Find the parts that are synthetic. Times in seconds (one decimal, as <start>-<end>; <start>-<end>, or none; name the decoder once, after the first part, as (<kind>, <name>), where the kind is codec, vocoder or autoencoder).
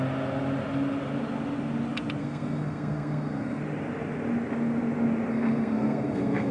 2.2-3.6 (codec, SNAC); 5.3-6.5